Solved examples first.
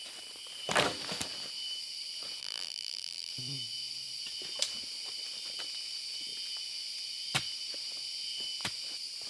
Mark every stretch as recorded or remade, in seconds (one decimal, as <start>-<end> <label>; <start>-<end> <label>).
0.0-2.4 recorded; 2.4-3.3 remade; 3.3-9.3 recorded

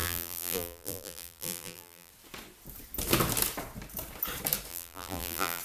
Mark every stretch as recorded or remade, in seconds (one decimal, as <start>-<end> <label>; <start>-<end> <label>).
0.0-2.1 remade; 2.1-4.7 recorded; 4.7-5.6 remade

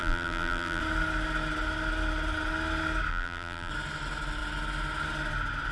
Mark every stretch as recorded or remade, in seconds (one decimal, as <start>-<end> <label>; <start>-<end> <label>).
0.0-0.8 remade; 0.8-3.1 recorded; 3.1-3.7 remade; 3.7-5.7 recorded